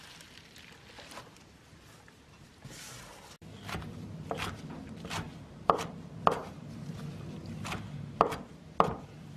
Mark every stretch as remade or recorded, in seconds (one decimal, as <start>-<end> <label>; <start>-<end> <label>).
0.0-9.4 recorded